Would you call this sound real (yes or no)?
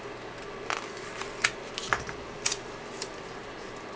yes